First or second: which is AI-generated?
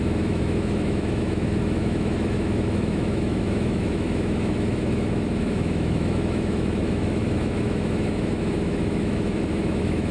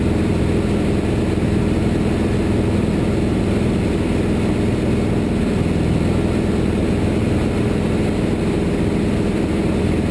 first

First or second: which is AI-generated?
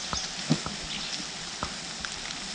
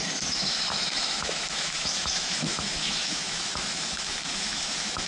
second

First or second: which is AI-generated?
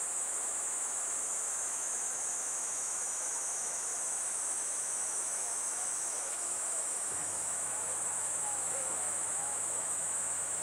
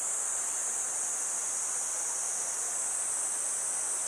first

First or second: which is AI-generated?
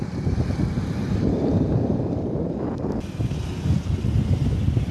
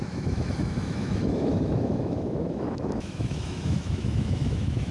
second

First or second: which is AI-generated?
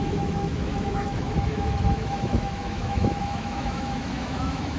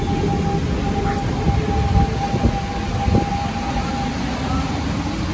first